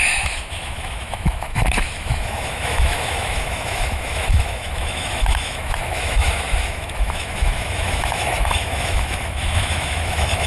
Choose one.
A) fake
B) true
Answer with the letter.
A